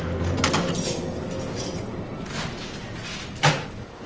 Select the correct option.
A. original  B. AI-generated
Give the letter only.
A